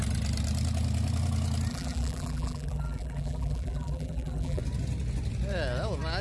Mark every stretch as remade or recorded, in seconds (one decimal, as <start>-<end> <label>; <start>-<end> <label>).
0.0-1.7 recorded; 1.7-4.6 remade; 4.6-6.2 recorded